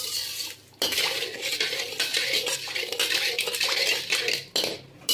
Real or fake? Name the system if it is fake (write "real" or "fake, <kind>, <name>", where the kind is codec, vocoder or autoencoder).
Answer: real